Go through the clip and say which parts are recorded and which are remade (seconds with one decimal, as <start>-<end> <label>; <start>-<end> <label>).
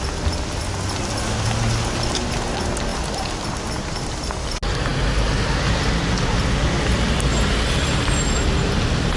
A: 0.0-9.2 recorded